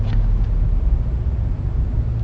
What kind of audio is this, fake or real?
real